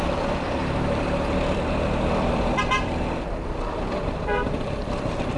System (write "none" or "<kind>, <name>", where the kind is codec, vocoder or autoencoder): vocoder, BigVGAN v2